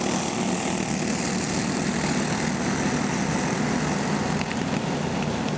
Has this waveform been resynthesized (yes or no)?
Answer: no